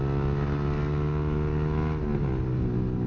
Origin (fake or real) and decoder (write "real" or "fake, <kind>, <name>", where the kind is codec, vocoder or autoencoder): real